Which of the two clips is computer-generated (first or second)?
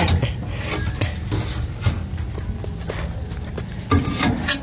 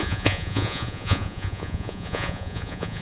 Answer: second